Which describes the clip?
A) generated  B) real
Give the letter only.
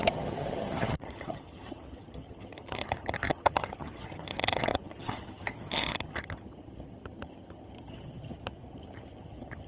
A